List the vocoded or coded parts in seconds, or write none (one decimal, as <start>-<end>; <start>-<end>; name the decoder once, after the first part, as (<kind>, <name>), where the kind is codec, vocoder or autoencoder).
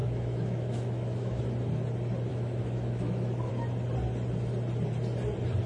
0.0-1.4 (autoencoder, DAC-VAE); 2.3-3.5